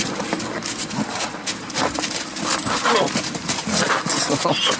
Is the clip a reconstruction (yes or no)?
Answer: no